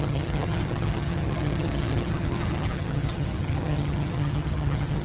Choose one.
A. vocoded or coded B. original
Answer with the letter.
A